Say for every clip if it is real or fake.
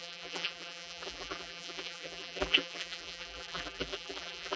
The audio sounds fake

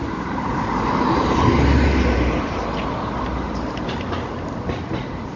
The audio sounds real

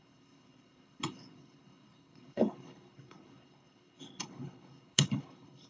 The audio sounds fake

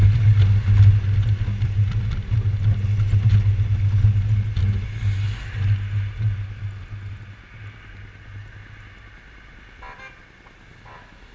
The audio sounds real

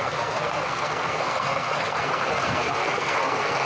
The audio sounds fake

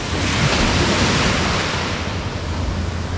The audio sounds real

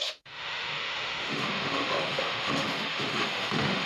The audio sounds fake